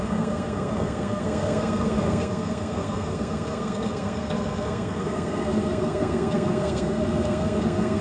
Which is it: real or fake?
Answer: fake